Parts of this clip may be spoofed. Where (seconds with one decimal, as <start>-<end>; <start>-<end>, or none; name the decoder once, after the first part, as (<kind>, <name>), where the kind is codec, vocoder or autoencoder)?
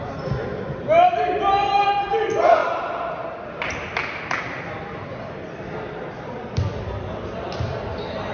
none